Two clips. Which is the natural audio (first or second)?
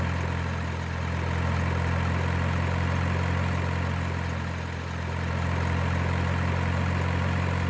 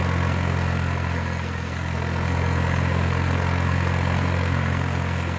first